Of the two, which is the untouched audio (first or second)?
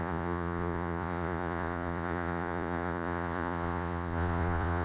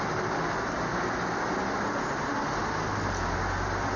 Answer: second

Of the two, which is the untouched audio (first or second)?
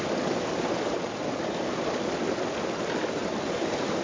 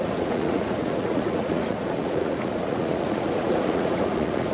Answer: first